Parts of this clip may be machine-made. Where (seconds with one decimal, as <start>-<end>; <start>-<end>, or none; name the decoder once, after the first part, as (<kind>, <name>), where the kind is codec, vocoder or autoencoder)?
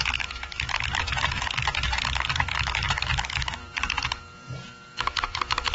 0.0-3.6 (autoencoder, DAC-VAE); 5.0-5.7